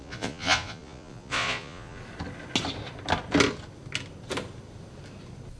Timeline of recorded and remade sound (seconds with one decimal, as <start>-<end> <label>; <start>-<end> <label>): 0.0-2.0 remade; 2.0-5.6 recorded